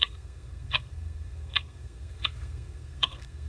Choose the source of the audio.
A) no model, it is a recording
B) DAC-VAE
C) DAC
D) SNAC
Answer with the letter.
D